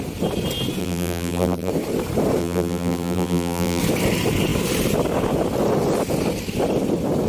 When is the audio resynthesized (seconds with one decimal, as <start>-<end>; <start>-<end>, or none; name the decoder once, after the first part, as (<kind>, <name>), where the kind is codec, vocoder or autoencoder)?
0.8-1.7 (vocoder, BigVGAN v2); 2.4-3.8